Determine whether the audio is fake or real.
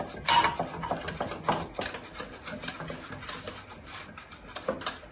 real